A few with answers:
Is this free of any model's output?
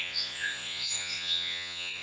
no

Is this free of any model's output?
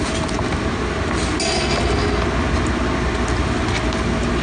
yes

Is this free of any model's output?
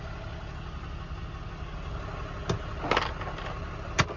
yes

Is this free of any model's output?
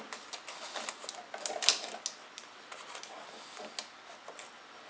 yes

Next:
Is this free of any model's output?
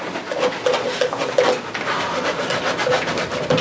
yes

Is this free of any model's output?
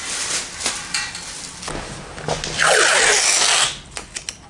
yes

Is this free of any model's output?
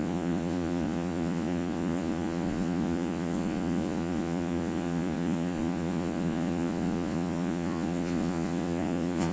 no